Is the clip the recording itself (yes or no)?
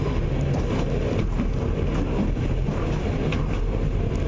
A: yes